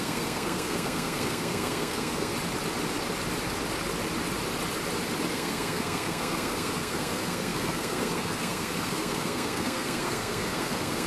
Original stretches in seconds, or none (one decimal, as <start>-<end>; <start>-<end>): 2.3-5.3